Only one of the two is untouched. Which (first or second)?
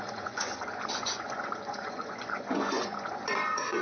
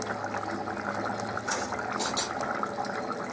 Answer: second